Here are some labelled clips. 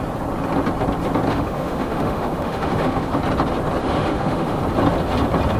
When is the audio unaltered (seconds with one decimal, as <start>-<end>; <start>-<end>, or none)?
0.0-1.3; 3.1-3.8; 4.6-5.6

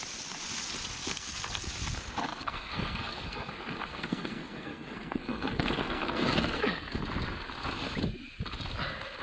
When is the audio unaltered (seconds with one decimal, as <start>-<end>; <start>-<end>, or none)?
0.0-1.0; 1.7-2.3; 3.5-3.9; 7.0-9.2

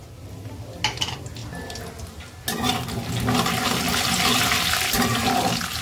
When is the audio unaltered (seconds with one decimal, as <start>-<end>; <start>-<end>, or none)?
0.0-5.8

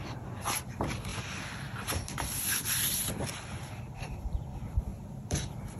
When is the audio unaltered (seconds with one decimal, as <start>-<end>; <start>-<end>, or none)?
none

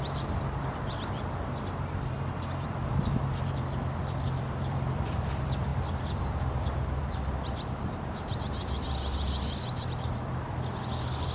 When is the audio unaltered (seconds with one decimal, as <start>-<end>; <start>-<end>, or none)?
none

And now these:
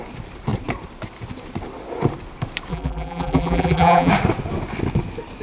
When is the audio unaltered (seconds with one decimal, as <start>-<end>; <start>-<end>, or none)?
0.0-2.7; 4.1-5.4